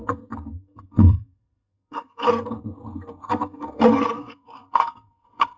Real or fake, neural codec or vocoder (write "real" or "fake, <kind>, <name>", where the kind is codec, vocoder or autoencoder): fake, codec, SNAC